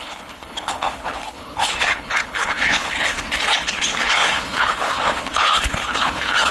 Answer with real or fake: fake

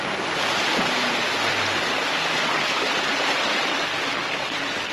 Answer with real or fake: real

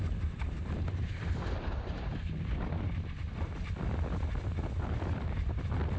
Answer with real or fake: real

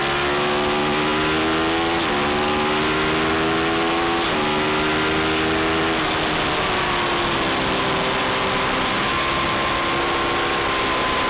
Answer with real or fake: real